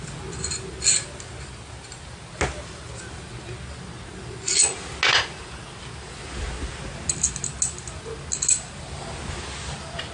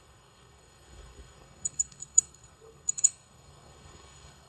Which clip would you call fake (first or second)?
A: second